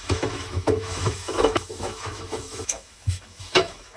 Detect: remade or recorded remade